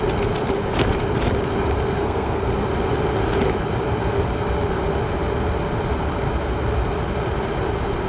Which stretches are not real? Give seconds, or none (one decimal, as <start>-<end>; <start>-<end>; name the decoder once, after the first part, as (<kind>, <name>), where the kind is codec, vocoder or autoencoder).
2.0-2.5 (codec, SNAC)